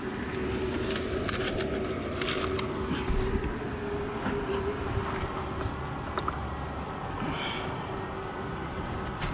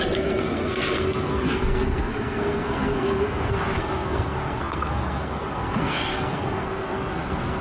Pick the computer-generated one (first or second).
second